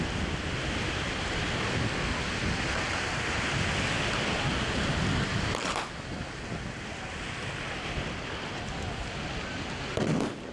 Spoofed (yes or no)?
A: no